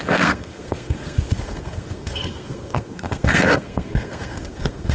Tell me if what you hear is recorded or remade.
remade